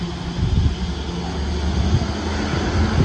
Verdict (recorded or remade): recorded